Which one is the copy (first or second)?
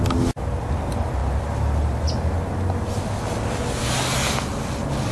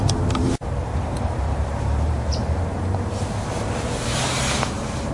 second